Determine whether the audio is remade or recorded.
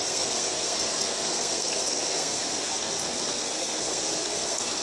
remade